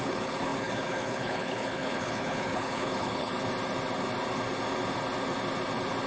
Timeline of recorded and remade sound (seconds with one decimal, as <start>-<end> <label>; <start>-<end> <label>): 0.0-3.3 remade; 3.3-6.1 recorded